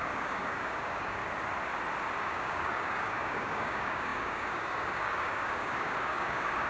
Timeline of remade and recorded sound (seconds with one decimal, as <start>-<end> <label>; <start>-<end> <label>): 0.0-1.2 remade; 1.2-2.2 recorded; 2.2-6.7 remade